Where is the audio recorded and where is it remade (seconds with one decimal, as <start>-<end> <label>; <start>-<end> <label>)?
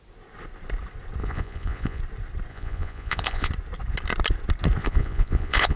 0.0-1.2 recorded; 1.2-2.0 remade; 2.0-2.5 recorded; 2.5-3.5 remade; 3.5-4.8 recorded; 4.8-5.8 remade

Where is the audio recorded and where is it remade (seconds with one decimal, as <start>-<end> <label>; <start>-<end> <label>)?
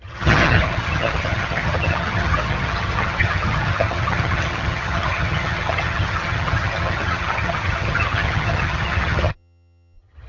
0.0-10.3 remade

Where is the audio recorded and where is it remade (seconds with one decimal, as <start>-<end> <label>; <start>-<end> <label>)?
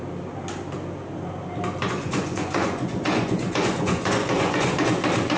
0.0-1.8 recorded; 1.8-5.0 remade; 5.0-5.4 recorded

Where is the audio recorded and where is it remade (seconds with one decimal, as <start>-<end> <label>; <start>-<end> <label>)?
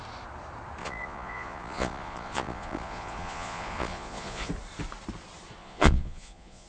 0.0-0.8 recorded; 0.8-4.5 remade; 4.5-5.6 recorded; 5.6-6.7 remade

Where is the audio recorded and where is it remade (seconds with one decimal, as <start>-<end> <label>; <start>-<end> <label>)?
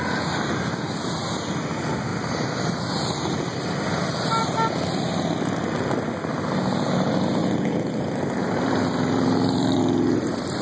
0.0-7.4 recorded; 7.4-9.8 remade; 9.8-10.6 recorded